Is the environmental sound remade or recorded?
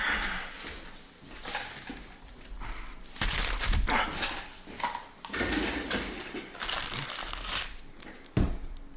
recorded